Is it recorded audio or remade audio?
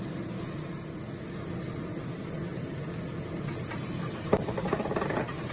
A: recorded